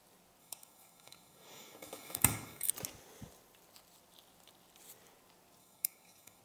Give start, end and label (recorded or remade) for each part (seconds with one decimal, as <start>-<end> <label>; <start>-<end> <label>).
0.0-0.4 recorded; 0.4-2.7 remade; 2.7-5.6 recorded; 5.6-6.4 remade